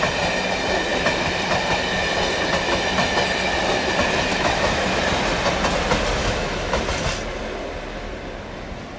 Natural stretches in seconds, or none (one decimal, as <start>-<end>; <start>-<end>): 0.0-4.3; 5.0-6.2; 6.8-9.0

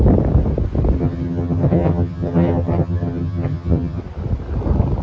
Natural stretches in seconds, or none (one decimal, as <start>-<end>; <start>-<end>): 0.0-1.0; 4.0-5.0